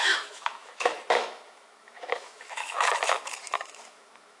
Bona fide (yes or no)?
no